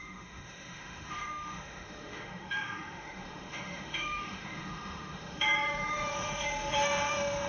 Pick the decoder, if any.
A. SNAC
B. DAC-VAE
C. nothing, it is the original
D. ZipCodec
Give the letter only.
B